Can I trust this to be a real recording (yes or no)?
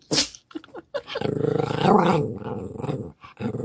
yes